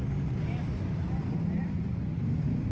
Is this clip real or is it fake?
real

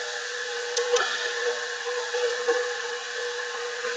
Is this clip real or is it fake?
fake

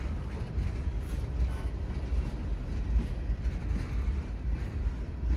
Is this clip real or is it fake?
real